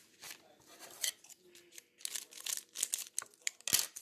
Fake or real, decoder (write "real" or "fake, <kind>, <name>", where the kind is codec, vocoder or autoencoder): real